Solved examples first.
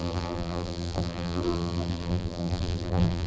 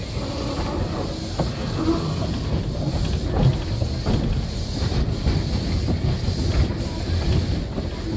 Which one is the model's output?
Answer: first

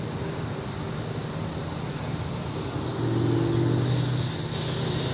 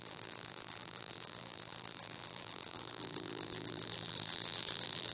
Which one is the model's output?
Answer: second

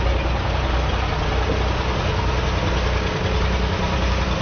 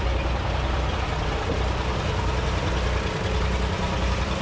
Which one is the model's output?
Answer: second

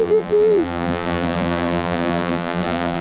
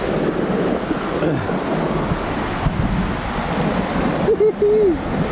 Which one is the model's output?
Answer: first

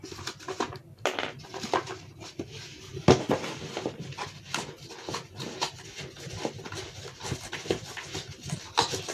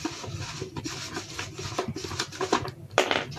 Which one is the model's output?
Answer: second